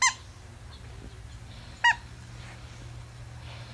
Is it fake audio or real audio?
real